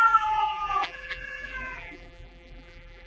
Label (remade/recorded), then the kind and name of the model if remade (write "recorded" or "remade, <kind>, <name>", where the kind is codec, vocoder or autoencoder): remade, vocoder, BigVGAN v2